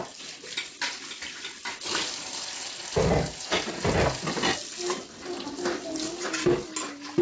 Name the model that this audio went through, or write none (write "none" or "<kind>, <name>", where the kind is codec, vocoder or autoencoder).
none